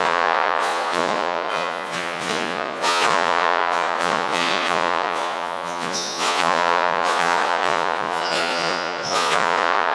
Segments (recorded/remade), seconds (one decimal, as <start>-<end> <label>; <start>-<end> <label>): 0.0-9.9 remade